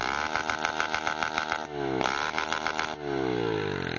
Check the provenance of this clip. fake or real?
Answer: real